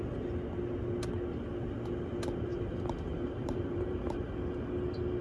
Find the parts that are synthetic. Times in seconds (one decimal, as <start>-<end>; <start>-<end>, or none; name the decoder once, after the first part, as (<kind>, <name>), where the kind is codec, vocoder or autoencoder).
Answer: 2.5-4.3 (vocoder, BigVGAN v2)